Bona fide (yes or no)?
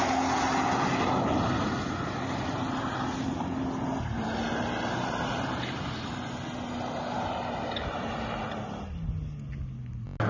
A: yes